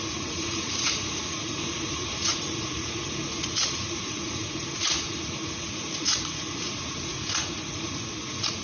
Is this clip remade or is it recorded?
remade